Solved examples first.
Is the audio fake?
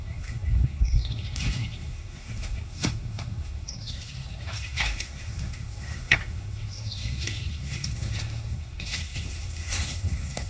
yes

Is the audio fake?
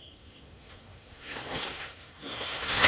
yes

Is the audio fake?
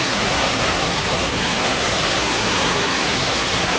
yes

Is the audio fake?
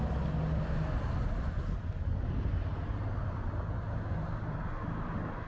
no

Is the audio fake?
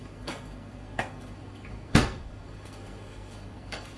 yes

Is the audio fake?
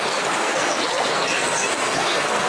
yes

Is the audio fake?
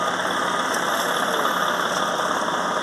no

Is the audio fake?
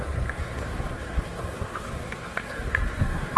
yes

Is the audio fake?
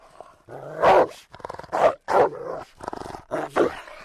no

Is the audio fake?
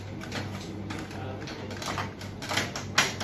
no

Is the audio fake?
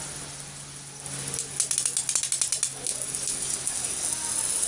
no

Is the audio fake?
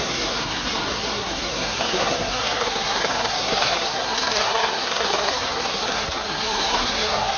yes